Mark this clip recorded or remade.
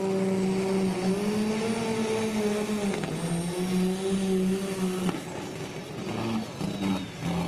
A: recorded